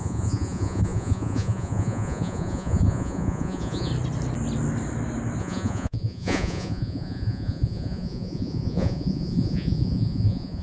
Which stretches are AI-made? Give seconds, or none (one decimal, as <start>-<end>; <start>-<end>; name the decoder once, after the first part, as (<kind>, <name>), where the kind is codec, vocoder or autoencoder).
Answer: 0.0-3.9 (vocoder, Vocos); 5.4-10.6